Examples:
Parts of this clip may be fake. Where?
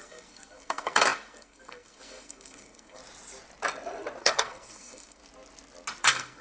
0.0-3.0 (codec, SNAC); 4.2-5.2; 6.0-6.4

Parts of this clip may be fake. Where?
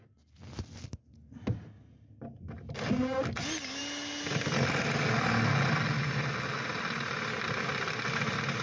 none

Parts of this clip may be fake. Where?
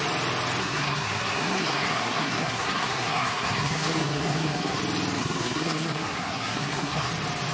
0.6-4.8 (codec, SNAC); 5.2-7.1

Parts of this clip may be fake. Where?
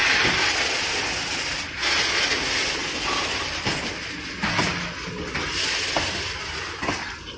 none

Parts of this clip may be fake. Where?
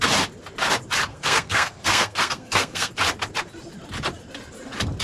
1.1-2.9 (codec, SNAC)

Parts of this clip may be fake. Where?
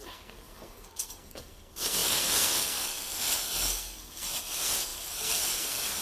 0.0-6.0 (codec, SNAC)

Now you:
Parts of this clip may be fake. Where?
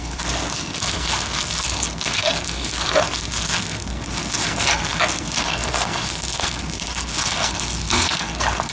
0.0-8.7 (codec, SNAC)